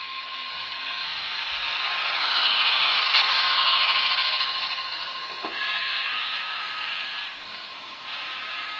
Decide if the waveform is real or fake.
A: fake